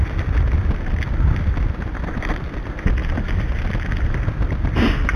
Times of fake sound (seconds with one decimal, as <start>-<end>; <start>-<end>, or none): none